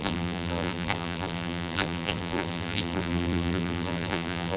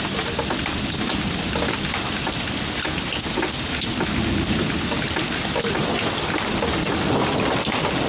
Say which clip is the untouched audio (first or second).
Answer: second